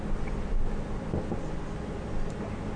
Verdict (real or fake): real